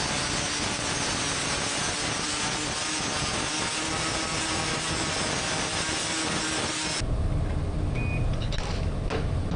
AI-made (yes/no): no